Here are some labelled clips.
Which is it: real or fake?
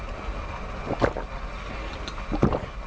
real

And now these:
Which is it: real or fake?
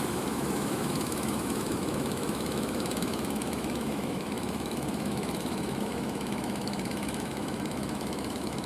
fake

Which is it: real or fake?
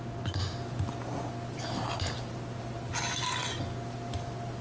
real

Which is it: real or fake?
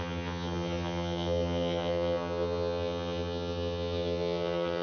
fake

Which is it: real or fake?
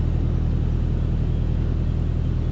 real